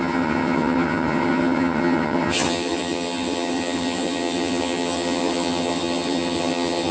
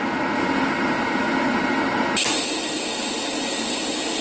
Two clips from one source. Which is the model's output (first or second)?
first